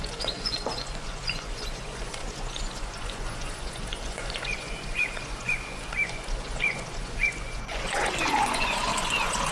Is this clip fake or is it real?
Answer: fake